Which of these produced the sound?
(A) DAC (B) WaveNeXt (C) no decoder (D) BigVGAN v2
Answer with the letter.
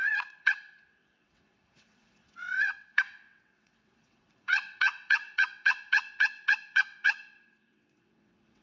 B